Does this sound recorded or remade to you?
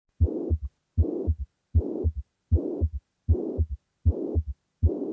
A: recorded